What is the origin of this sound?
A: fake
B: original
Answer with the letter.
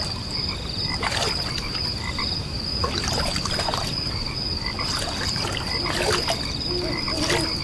B